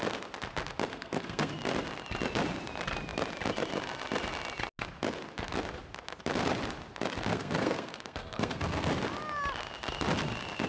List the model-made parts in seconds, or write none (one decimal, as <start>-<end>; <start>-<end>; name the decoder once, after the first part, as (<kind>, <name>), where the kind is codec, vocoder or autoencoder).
0.9-1.5 (codec, SNAC); 7.3-8.9